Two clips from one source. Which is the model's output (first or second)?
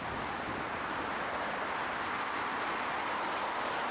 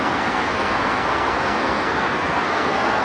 second